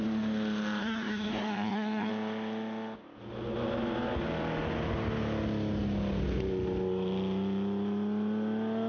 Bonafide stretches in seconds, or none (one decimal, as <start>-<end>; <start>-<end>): 0.0-0.8; 2.1-8.9